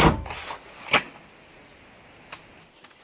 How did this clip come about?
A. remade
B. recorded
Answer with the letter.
B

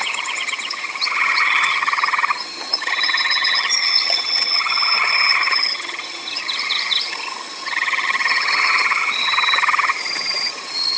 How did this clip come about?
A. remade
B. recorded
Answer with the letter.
A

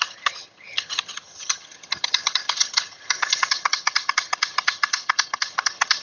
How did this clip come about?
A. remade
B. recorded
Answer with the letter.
A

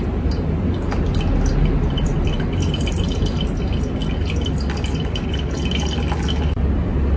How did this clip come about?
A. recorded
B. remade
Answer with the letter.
A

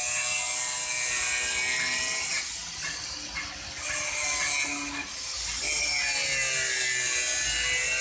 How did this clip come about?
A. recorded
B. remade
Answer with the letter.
A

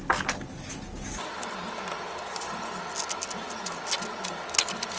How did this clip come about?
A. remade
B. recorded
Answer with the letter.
B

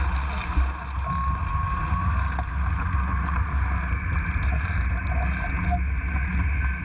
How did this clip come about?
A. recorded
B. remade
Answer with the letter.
A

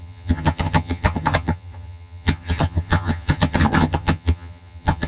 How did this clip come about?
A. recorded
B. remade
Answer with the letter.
B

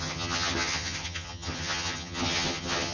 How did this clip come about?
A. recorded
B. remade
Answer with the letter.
B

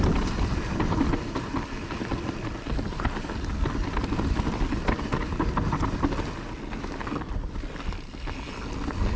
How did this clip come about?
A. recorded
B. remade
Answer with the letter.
A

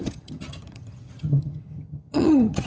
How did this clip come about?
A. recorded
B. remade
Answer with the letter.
B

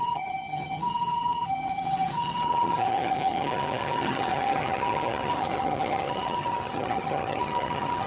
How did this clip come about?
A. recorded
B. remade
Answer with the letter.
B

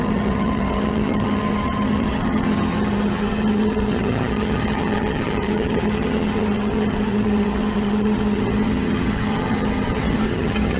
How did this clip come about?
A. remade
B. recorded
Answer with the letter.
A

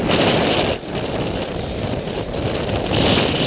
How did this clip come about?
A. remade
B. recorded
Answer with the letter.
B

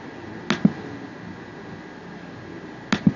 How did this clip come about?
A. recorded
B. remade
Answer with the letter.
A